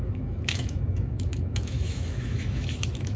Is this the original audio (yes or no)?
no